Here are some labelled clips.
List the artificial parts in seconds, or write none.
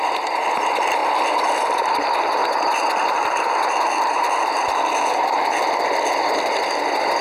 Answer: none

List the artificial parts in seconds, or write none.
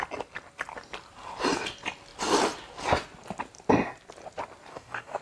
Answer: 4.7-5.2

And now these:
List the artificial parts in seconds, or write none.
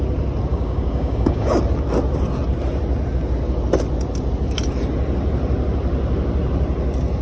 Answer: 0.5-1.6